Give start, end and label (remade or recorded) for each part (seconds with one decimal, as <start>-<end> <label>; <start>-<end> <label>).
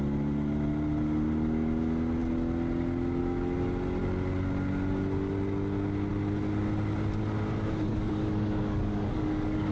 0.0-7.9 recorded; 7.9-9.7 remade